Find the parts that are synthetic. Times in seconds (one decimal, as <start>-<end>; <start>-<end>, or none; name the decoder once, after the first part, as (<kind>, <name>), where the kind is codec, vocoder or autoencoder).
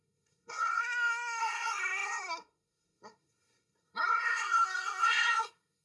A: 0.0-0.8 (codec, SNAC); 1.4-5.8